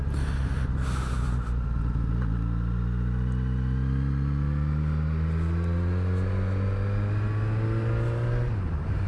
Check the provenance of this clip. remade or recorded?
recorded